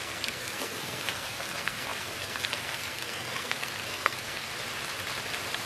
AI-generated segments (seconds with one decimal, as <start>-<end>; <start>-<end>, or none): 0.0-4.5